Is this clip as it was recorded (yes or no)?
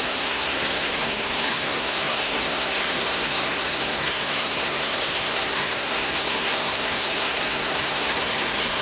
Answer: no